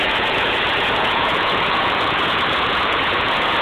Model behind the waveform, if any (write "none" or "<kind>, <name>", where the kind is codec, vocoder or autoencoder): vocoder, Vocos